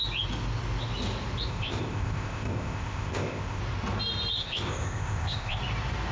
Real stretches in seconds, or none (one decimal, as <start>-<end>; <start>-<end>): 0.0-1.5; 3.6-4.4; 5.6-6.1